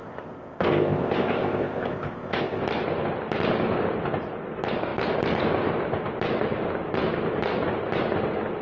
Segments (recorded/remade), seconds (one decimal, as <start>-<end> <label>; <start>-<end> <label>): 0.0-2.6 remade; 2.6-8.6 recorded